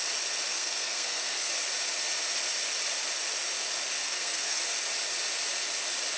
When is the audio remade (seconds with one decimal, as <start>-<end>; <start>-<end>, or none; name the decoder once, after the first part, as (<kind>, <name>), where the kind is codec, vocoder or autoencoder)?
0.5-1.5 (codec, SNAC); 4.0-4.6